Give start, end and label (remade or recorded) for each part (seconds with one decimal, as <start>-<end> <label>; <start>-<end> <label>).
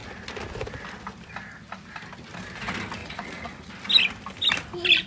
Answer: 0.0-3.0 recorded; 3.0-3.7 remade; 3.7-5.1 recorded